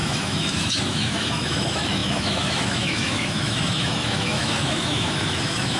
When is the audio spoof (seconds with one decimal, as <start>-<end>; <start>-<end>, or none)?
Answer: 0.0-5.8